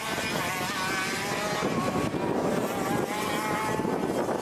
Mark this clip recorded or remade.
recorded